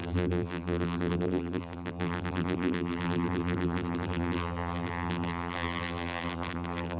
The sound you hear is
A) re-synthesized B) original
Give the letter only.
A